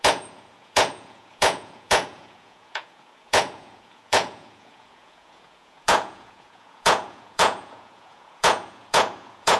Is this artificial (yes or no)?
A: yes